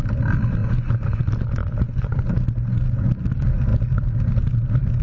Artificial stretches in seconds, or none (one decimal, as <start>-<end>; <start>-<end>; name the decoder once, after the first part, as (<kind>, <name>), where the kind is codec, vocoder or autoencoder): 0.6-1.2 (vocoder, Vocos); 1.6-2.3